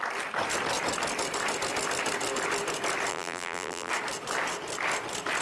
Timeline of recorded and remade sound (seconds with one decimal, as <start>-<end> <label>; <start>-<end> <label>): 0.0-3.1 recorded; 3.1-3.9 remade; 3.9-5.4 recorded